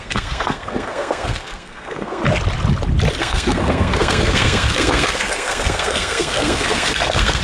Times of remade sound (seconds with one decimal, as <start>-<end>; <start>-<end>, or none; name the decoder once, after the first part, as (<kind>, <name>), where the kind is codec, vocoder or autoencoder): 0.0-2.2 (codec, SNAC); 3.2-7.4